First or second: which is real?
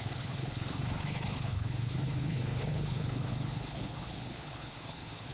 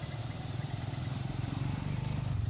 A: second